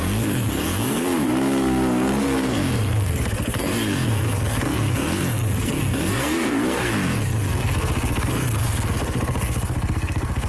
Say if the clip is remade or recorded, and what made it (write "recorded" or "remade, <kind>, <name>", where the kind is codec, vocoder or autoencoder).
remade, codec, SNAC